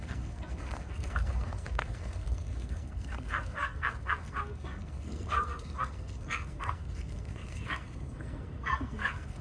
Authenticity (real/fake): fake